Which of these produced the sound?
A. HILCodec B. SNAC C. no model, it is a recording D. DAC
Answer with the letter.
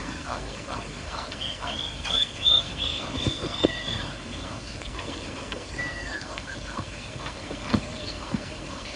B